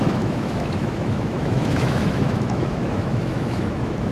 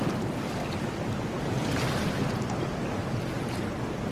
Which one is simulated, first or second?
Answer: first